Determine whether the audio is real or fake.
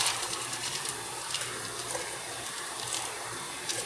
fake